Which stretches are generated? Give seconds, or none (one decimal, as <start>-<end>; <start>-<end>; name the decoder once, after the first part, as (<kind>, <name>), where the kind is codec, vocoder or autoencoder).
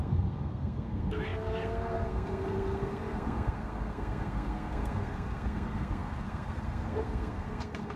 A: 0.0-8.0 (codec, SNAC)